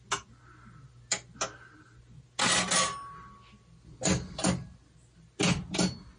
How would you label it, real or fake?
real